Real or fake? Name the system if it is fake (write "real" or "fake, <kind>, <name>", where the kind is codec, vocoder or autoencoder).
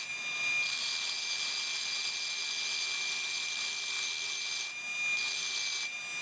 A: real